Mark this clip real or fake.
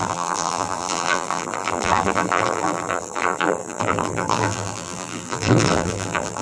fake